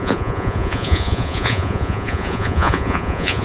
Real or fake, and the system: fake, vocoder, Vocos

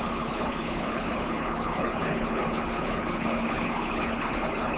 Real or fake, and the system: fake, codec, HILCodec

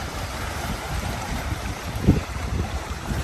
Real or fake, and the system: fake, vocoder, BigVGAN v2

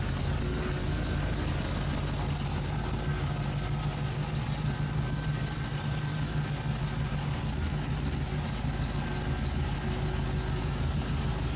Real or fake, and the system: real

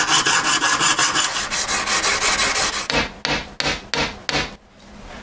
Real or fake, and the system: real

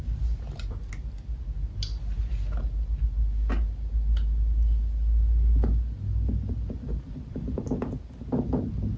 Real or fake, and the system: real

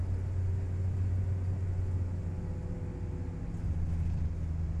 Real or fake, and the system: real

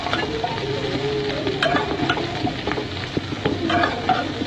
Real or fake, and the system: real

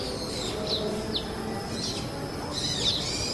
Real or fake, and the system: real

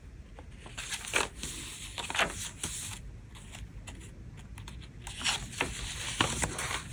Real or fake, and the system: real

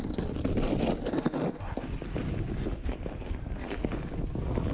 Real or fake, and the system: real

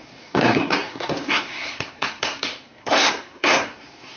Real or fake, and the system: fake, codec, SNAC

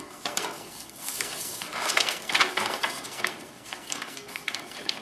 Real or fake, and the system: fake, codec, SNAC